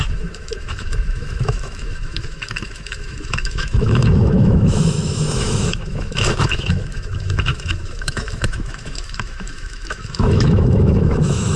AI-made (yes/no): yes